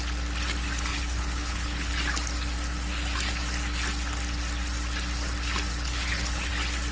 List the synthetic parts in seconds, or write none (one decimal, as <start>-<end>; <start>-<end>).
0.9-1.9; 5.7-6.5